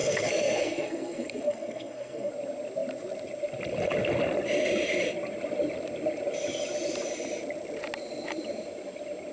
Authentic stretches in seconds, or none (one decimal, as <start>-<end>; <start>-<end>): 2.3-9.3